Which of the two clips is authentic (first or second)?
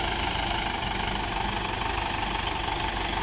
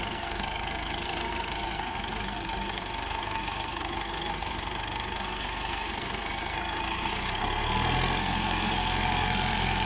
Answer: first